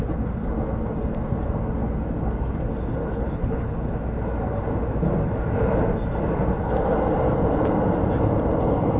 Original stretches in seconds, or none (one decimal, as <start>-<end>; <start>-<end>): 0.0-3.0; 3.9-9.0